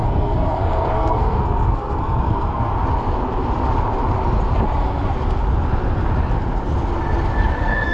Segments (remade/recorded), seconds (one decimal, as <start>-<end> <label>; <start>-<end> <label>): 0.0-2.7 remade; 2.7-7.4 recorded; 7.4-7.9 remade